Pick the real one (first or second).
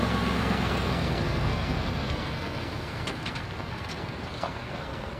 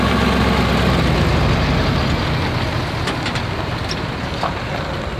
second